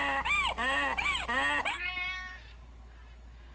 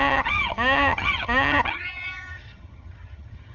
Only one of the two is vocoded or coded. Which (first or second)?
second